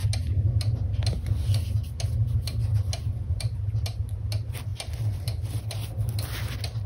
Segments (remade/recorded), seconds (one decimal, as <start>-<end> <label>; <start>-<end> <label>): 0.0-4.7 recorded; 4.7-5.6 remade; 5.6-6.9 recorded